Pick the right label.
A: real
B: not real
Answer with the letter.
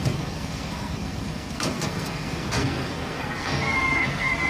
B